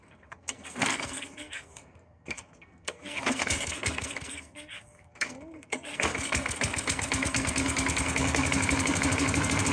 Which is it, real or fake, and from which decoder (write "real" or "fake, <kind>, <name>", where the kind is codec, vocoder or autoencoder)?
fake, codec, SNAC